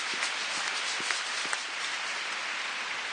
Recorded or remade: recorded